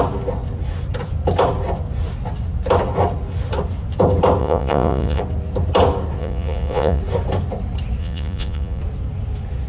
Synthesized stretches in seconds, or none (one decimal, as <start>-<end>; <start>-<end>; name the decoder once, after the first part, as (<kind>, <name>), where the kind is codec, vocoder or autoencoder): 4.4-5.2 (vocoder, Vocos); 6.2-7.0; 8.0-8.8